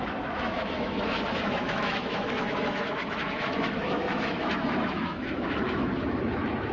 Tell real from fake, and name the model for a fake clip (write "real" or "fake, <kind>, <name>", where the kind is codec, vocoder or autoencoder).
fake, autoencoder, DAC-VAE